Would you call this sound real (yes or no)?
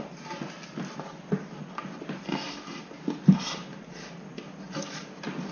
yes